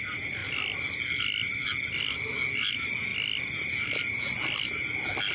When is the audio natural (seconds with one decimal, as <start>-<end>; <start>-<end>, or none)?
0.0-5.3